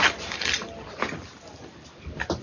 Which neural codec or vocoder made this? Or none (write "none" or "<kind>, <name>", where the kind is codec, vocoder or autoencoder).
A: vocoder, BigVGAN v2